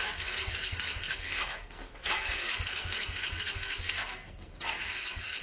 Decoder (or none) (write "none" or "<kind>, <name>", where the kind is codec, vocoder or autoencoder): codec, SNAC